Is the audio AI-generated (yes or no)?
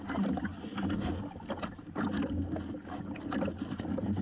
no